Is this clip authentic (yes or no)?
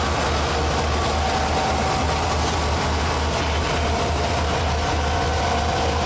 yes